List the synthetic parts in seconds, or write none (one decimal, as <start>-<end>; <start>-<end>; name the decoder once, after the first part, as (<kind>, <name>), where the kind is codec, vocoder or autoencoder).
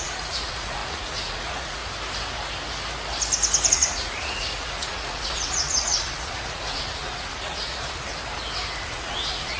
0.0-1.8 (vocoder, Vocos); 3.7-8.1; 8.8-9.6